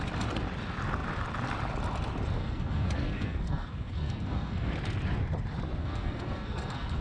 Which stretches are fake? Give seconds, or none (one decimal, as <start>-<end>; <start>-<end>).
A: 2.4-4.7; 5.8-7.0